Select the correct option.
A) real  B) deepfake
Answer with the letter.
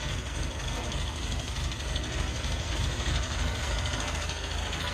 B